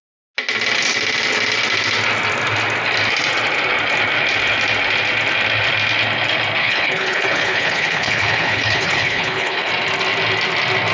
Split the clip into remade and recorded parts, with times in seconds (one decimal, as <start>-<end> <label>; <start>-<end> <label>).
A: 0.0-6.6 recorded; 6.6-9.7 remade; 9.7-10.9 recorded